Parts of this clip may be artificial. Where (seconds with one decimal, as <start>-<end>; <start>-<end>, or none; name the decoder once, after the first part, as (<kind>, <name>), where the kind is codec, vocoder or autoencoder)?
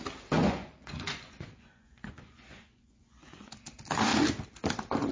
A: 0.4-3.5 (vocoder, Vocos)